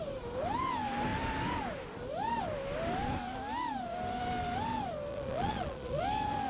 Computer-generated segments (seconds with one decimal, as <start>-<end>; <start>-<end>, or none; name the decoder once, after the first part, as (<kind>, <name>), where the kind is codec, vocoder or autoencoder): 5.1-6.0 (vocoder, Vocos)